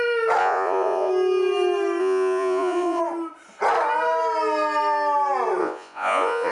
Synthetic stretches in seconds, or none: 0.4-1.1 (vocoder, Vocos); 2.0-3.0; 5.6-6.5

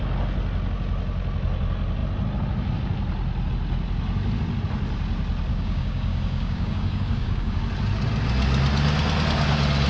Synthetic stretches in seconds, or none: 5.5-7.6 (codec, DAC)

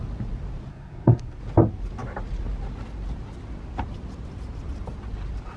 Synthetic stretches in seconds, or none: 0.7-1.4 (codec, SNAC)

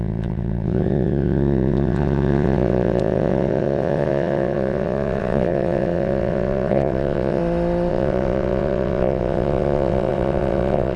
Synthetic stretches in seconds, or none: 0.0-7.4 (vocoder, WaveNeXt); 7.9-11.0

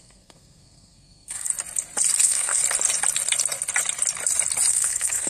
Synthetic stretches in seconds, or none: 0.0-1.5 (codec, SNAC); 2.2-2.6; 4.7-5.3

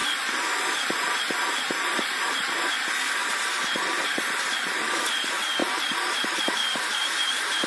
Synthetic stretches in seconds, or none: 0.0-2.5 (vocoder, BigVGAN v2); 3.2-5.1; 5.6-7.7

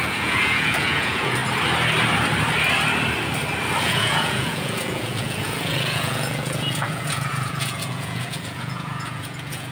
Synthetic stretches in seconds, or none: 0.0-1.4 (vocoder, Vocos); 3.8-9.7

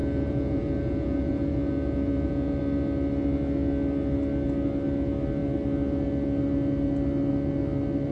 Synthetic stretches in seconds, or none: 0.0-2.6 (vocoder, Vocos)